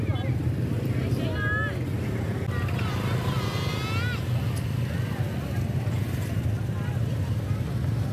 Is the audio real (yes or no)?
yes